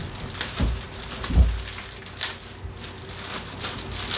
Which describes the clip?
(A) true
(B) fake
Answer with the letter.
A